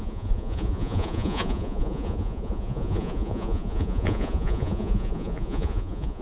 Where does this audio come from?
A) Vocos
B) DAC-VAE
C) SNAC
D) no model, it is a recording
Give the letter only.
A